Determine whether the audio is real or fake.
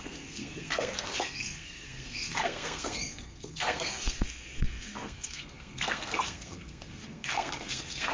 fake